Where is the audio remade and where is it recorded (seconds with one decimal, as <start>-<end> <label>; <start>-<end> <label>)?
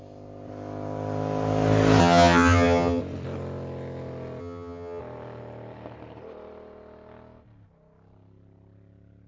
0.0-2.0 recorded; 2.0-3.0 remade; 3.0-4.4 recorded; 4.4-5.0 remade; 5.0-9.3 recorded